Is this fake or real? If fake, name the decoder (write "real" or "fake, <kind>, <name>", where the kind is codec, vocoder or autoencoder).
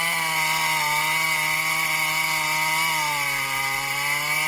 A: real